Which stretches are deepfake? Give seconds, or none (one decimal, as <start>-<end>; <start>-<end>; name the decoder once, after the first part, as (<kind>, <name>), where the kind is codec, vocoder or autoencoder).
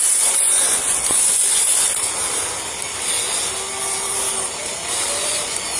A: 0.0-1.7 (vocoder, Vocos); 5.2-5.8